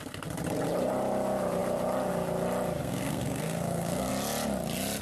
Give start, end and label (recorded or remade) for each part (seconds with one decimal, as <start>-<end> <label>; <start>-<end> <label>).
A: 0.0-2.8 recorded; 2.8-4.1 remade; 4.1-5.0 recorded